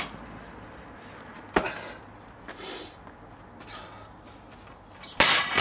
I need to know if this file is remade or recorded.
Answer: recorded